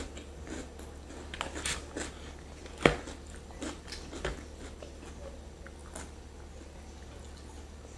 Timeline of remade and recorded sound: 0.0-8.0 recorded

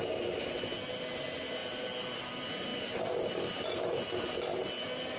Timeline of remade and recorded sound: 0.0-2.7 recorded; 2.7-4.6 remade; 4.6-5.2 recorded

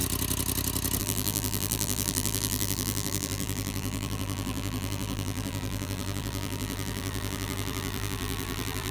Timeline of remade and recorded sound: 0.0-1.0 recorded; 1.0-8.9 remade

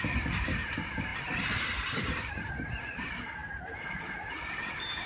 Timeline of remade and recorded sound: 0.0-5.1 remade

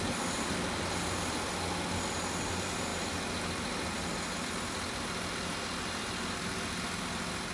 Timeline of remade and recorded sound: 0.0-7.5 recorded

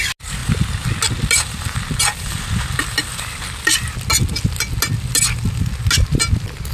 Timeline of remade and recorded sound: 0.0-6.7 recorded